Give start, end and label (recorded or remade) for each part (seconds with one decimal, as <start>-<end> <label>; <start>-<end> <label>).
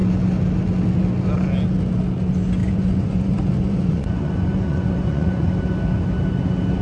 0.0-2.6 recorded; 2.6-5.5 remade; 5.5-6.8 recorded